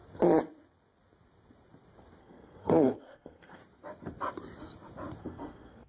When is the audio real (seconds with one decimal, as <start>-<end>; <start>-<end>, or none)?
0.0-2.2; 3.6-5.2